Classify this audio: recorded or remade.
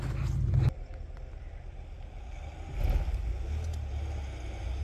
recorded